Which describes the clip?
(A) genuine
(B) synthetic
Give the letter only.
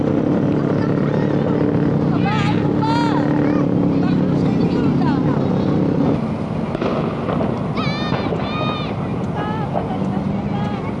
A